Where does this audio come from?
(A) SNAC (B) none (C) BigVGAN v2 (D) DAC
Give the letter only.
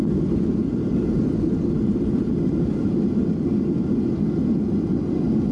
B